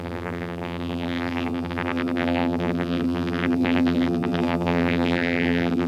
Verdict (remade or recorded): remade